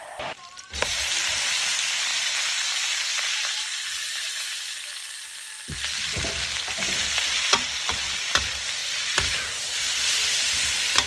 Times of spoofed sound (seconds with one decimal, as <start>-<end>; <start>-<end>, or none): 0.0-2.1; 5.5-7.0; 7.9-11.1